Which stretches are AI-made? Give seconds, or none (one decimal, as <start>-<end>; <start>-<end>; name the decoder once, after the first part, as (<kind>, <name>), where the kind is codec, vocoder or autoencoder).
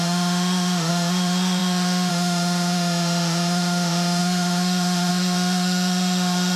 0.0-6.6 (autoencoder, DAC-VAE)